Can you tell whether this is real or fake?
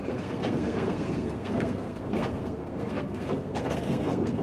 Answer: fake